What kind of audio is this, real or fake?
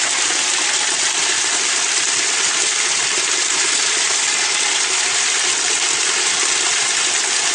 real